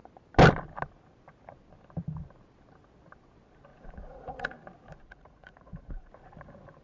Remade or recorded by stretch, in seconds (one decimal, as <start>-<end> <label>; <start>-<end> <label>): 0.0-3.7 recorded; 3.7-4.5 remade; 4.5-5.0 recorded; 5.0-6.1 remade; 6.1-6.8 recorded

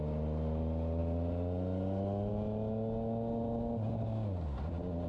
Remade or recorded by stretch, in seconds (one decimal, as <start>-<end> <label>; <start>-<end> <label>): 0.0-5.1 recorded

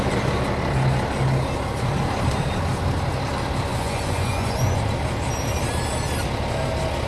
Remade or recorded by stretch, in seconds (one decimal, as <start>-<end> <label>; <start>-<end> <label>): 0.0-3.7 recorded; 3.7-4.8 remade; 4.8-7.1 recorded